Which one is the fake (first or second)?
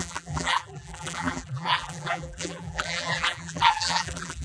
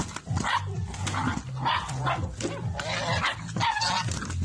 first